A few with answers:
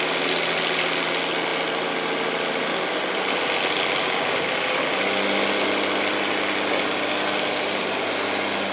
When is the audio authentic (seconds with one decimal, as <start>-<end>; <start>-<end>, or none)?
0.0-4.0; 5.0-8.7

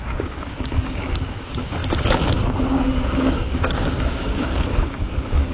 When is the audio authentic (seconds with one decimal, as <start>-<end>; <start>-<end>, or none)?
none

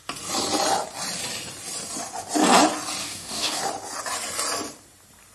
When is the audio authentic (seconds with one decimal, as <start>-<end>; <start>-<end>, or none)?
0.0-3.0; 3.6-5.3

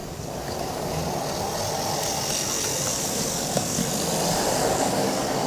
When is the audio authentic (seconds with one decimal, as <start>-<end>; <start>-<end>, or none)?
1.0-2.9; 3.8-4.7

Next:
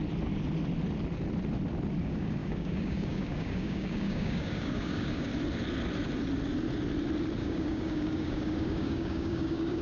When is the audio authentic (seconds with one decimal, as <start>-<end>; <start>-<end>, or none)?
0.0-2.0; 5.3-7.4

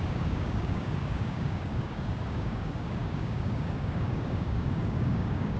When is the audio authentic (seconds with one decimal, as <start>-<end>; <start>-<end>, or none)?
none

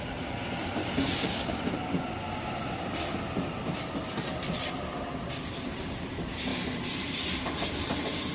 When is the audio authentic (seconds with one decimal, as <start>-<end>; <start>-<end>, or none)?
0.0-0.8; 1.6-8.3

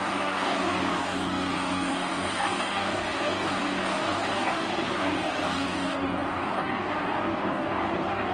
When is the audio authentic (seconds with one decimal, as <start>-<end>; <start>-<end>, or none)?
none